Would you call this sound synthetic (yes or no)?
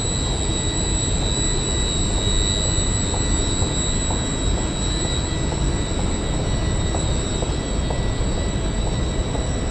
no